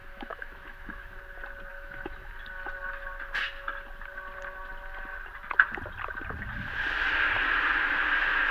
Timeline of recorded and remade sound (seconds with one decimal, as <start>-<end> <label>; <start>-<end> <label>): 0.0-1.2 remade; 1.2-1.7 recorded; 1.7-2.3 remade; 2.3-8.5 recorded